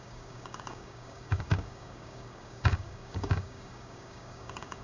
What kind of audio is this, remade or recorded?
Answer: remade